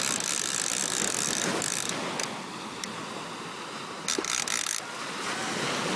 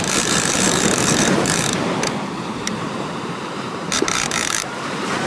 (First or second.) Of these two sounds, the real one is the first